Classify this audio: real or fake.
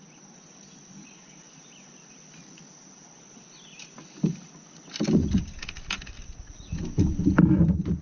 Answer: real